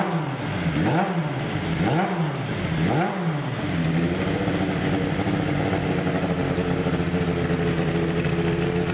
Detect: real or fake real